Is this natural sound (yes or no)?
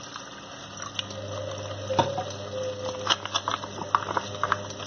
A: yes